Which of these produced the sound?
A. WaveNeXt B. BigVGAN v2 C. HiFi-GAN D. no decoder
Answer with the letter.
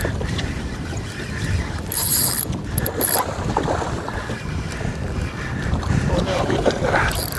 B